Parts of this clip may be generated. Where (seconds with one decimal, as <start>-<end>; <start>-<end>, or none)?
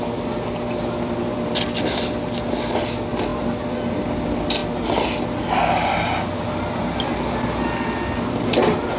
none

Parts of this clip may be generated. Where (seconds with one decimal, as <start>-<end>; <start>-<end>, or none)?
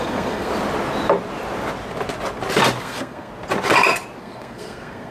0.0-0.5; 2.8-3.3; 4.2-5.1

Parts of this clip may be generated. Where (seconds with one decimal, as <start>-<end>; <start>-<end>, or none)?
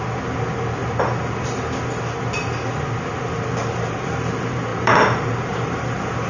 3.6-4.1; 4.7-6.3